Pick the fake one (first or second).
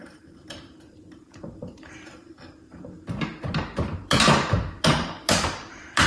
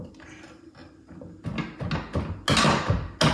first